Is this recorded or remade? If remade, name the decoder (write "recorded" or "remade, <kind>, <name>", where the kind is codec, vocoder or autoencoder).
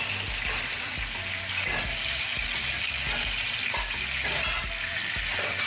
recorded